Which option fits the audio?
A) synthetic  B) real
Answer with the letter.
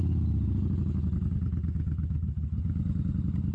B